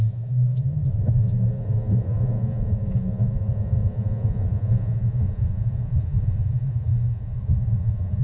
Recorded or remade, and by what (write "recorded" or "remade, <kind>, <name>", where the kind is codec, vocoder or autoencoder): remade, vocoder, Vocos